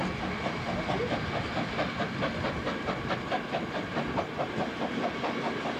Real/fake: real